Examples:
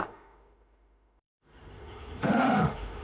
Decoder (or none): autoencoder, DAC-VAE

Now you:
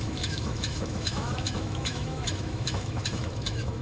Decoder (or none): autoencoder, DAC-VAE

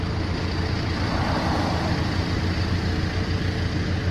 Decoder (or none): none